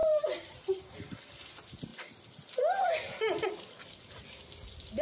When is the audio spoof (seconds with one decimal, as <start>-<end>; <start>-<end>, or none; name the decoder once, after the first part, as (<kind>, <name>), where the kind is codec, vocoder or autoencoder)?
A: 0.0-1.5 (vocoder, BigVGAN v2); 1.9-4.3